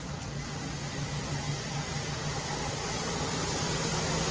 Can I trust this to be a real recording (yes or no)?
yes